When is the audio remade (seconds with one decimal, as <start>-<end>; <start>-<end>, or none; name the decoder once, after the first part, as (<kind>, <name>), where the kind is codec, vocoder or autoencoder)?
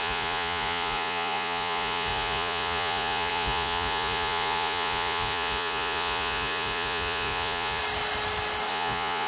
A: 0.0-7.8 (vocoder, Vocos); 8.7-9.3